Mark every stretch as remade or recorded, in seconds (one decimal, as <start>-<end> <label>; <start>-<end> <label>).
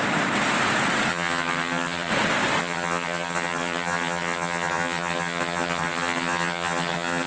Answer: 0.0-1.1 recorded; 1.1-2.1 remade; 2.1-2.6 recorded; 2.6-7.3 remade